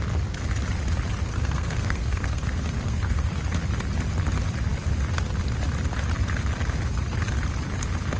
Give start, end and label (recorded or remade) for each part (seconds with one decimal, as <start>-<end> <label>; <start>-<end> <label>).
0.0-1.3 recorded; 1.3-3.4 remade; 3.4-8.2 recorded